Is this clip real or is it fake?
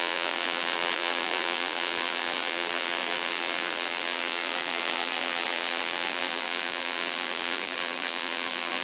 fake